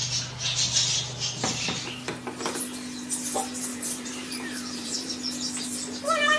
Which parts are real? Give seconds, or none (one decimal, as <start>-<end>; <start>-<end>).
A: 0.0-3.7; 5.1-6.4